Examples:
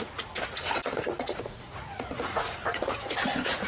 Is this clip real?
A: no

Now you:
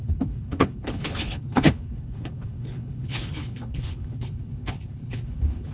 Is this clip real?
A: no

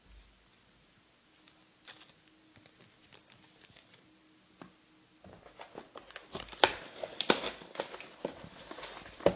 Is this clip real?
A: yes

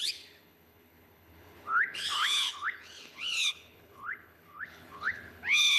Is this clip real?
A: no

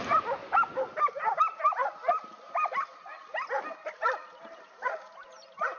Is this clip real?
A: yes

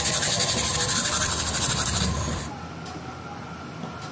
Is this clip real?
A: yes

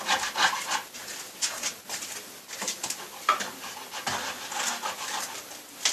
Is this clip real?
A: yes